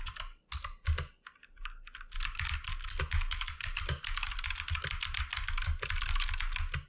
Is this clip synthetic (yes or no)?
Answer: no